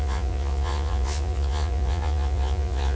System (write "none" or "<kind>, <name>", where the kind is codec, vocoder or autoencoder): vocoder, Vocos